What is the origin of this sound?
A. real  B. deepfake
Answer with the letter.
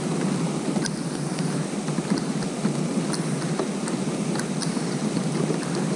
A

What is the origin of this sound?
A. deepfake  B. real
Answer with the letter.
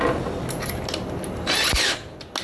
B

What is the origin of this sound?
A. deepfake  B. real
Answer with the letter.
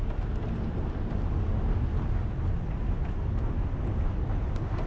B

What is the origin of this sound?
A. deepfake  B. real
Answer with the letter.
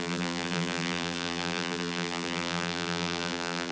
A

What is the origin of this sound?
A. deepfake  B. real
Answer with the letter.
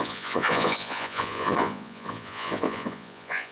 A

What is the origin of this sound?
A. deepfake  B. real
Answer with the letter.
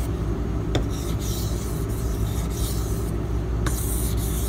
B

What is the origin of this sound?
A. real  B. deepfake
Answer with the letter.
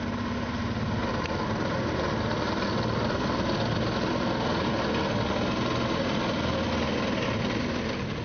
A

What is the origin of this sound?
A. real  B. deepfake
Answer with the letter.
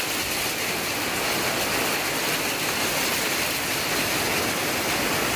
A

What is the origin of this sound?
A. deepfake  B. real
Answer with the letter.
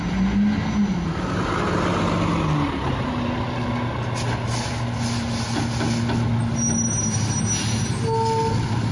B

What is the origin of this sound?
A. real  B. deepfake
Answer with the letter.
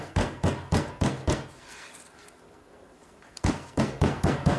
B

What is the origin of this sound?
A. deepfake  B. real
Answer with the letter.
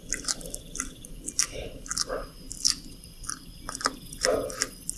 B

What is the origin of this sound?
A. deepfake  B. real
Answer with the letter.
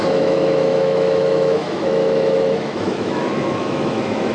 A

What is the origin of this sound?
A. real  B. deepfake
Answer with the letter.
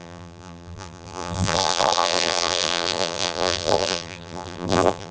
B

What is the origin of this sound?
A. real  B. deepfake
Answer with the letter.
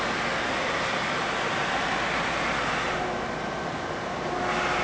A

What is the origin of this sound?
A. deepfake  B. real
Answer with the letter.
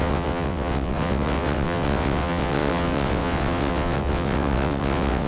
A